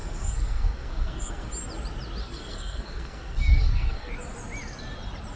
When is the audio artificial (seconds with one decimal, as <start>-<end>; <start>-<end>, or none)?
0.0-1.5; 2.2-4.1